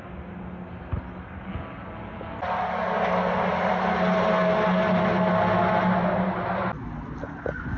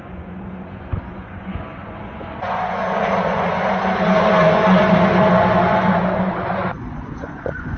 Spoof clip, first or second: second